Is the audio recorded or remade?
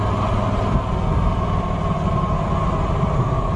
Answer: recorded